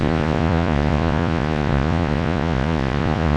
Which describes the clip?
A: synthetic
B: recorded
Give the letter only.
A